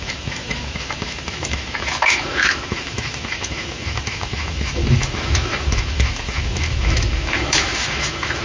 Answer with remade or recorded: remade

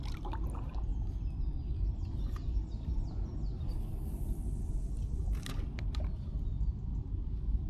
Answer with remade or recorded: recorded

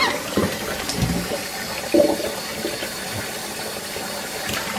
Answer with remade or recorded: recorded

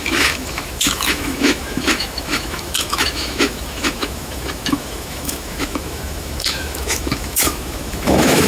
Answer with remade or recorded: remade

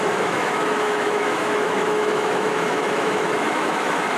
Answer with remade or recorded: remade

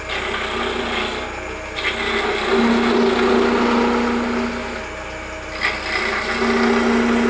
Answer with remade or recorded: recorded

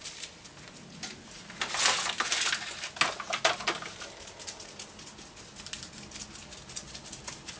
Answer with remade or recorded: recorded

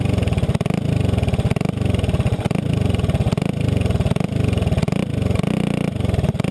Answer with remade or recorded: recorded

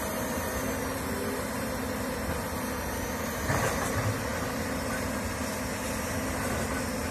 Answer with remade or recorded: recorded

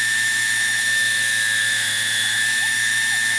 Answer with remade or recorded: remade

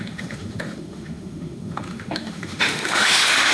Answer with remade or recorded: remade